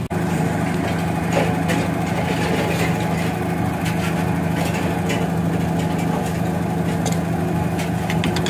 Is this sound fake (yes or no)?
no